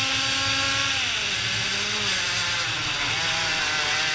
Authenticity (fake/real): real